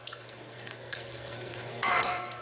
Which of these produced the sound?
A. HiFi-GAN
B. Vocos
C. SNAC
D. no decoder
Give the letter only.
C